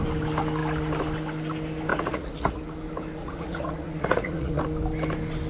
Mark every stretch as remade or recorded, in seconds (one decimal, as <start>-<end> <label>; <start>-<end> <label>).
0.0-1.9 recorded; 1.9-2.6 remade; 2.6-3.2 recorded; 3.2-4.6 remade; 4.6-5.5 recorded